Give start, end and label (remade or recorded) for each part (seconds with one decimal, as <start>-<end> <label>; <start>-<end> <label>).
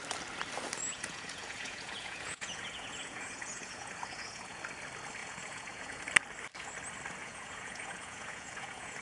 0.0-0.9 recorded; 0.9-4.6 remade; 4.6-5.2 recorded; 5.2-6.0 remade; 6.0-7.2 recorded; 7.2-9.0 remade